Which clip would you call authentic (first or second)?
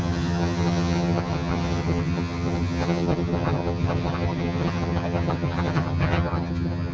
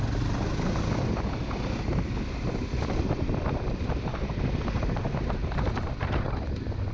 second